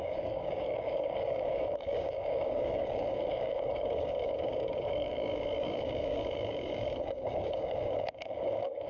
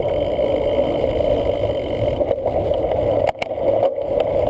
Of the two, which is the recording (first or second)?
second